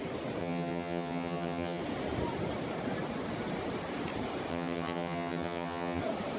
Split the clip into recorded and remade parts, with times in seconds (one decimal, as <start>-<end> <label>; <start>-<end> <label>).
0.0-0.4 recorded; 0.4-1.8 remade; 1.8-4.5 recorded; 4.5-6.0 remade; 6.0-6.4 recorded